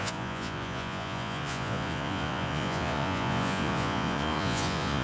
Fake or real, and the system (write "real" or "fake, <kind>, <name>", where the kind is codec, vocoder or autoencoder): fake, vocoder, Vocos